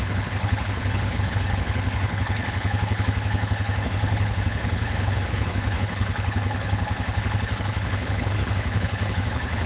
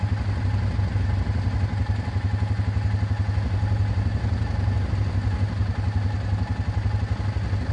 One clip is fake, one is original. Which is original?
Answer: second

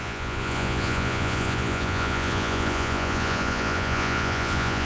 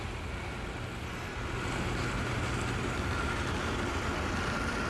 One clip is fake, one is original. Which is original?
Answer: second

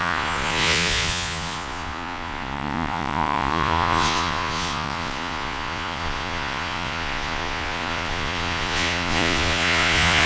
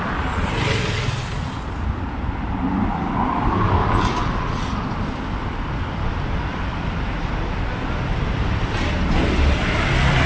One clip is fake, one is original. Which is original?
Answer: second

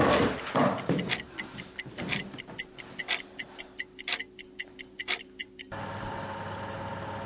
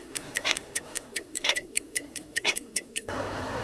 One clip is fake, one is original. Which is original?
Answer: first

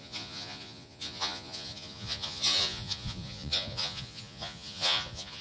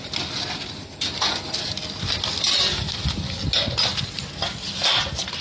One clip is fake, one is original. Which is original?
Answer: second